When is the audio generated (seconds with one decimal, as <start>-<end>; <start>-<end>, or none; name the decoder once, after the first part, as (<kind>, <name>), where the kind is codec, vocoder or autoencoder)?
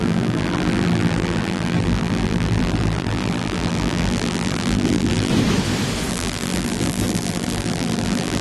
0.0-5.3 (vocoder, BigVGAN v2); 6.1-8.4